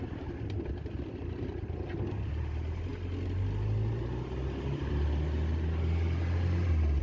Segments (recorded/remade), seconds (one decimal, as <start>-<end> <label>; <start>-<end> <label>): 0.0-7.0 recorded